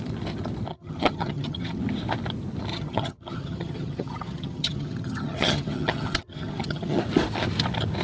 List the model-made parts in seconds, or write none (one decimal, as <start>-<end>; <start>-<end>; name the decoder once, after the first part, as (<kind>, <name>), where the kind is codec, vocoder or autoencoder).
0.7-1.8 (vocoder, HiFi-GAN); 2.7-7.0